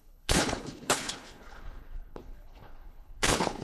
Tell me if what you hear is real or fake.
fake